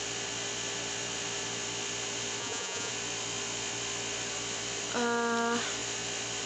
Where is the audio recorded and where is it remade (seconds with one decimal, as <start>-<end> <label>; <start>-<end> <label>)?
0.0-2.4 recorded; 2.4-2.9 remade; 2.9-6.5 recorded